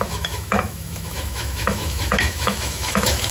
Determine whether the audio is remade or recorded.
remade